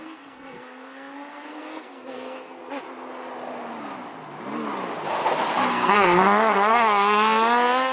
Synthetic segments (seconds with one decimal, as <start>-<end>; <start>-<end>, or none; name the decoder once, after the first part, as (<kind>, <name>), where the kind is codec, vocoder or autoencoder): 0.0-2.6 (codec, SNAC); 5.7-7.9